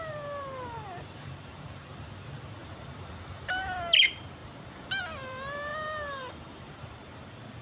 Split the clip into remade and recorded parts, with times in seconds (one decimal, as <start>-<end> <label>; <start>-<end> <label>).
0.0-2.6 remade; 2.6-4.0 recorded; 4.0-4.4 remade; 4.4-5.0 recorded; 5.0-7.6 remade